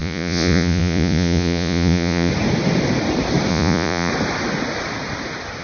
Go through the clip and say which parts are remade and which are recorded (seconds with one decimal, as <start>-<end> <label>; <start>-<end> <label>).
0.0-2.3 remade; 2.3-3.5 recorded; 3.5-4.1 remade; 4.1-5.6 recorded